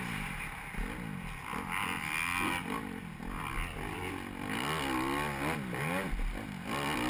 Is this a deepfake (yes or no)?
no